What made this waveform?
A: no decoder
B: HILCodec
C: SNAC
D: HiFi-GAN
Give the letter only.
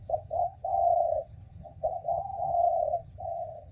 D